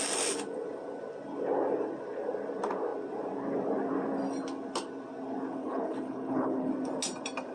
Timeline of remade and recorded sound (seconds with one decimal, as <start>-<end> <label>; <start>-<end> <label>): 0.0-5.6 recorded; 5.6-6.7 remade; 6.7-7.5 recorded